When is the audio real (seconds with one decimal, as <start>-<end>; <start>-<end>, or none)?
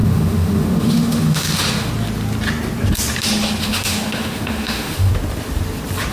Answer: 1.9-3.6; 5.1-6.1